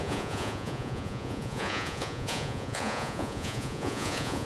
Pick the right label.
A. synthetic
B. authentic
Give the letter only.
A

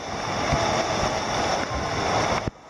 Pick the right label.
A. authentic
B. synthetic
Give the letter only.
A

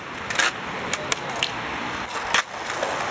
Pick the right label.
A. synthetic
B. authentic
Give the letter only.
B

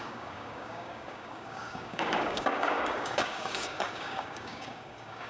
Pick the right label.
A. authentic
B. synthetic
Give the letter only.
B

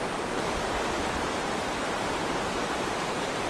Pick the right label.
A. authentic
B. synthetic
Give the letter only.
A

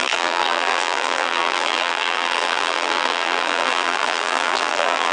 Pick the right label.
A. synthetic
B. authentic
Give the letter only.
A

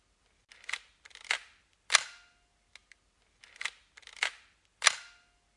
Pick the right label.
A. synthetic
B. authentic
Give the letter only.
B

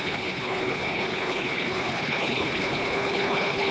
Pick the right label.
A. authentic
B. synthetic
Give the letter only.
B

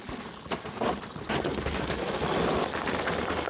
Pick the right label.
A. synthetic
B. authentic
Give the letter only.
B